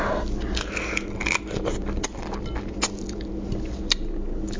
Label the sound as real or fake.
real